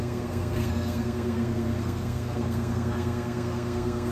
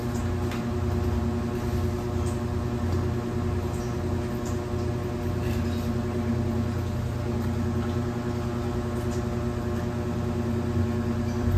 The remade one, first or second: first